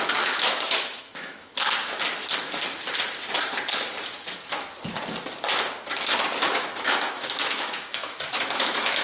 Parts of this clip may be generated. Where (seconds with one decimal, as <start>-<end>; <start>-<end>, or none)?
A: 0.0-1.5; 6.5-9.0

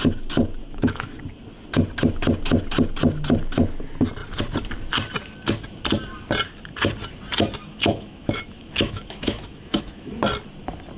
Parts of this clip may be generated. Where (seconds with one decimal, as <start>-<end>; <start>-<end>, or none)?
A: 0.6-1.2; 7.7-10.1

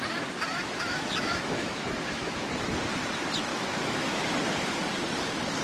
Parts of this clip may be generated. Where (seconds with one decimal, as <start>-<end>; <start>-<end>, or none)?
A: 0.5-2.4; 3.5-4.3

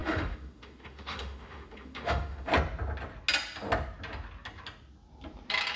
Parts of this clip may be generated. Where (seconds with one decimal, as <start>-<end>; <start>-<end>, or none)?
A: 0.0-2.5

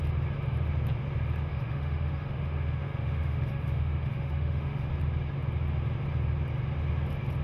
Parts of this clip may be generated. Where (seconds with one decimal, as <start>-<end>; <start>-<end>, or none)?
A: 1.5-4.9

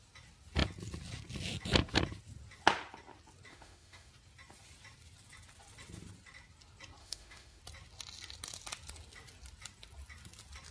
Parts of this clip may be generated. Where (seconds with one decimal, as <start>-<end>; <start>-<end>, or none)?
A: 3.5-4.1; 7.0-7.6

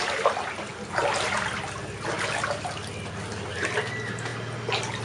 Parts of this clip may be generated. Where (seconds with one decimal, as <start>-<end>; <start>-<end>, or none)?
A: none

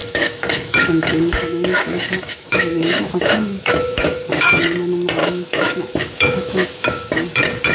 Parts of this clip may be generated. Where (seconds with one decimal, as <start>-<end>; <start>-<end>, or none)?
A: 0.0-4.6; 5.2-7.1